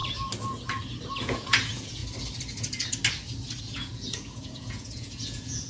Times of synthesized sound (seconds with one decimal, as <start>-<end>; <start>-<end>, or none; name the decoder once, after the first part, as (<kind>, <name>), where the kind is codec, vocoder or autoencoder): 1.2-2.0 (vocoder, Vocos); 3.6-5.7